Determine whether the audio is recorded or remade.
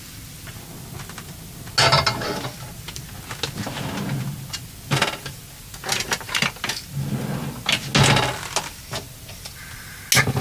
recorded